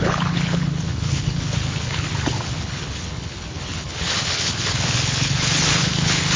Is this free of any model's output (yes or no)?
no